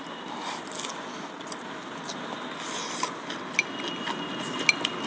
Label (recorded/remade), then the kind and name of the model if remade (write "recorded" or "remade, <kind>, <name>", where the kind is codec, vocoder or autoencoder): recorded